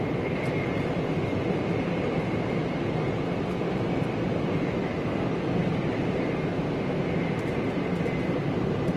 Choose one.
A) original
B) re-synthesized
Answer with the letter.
A